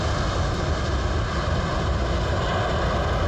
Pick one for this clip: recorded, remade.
recorded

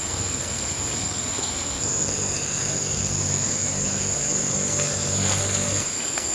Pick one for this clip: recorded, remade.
remade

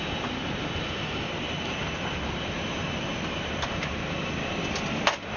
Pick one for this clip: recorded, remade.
recorded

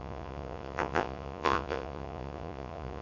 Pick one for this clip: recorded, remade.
remade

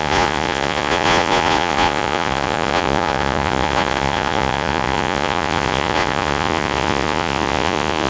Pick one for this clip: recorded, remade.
remade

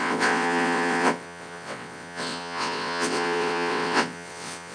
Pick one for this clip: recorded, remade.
remade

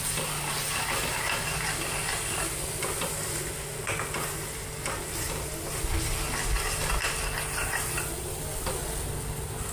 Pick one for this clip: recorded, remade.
recorded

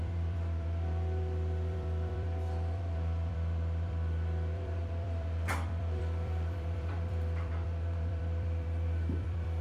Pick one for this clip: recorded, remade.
remade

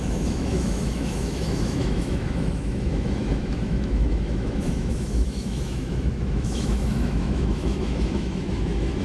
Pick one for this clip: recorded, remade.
remade